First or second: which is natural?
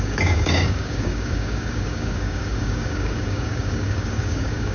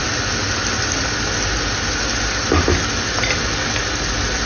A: second